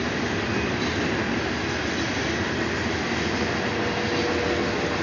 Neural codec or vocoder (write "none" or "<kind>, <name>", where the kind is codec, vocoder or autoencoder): none